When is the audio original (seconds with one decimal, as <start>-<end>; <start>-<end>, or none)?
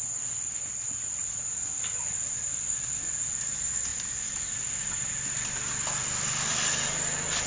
0.0-7.5